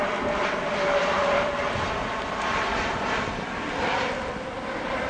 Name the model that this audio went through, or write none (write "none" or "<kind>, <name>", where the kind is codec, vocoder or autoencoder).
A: vocoder, BigVGAN v2